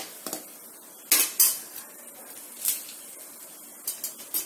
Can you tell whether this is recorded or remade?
recorded